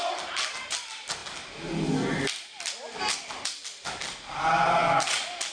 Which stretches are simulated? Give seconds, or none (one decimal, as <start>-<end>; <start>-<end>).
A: none